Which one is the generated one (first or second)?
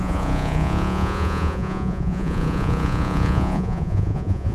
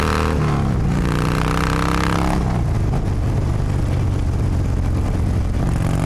first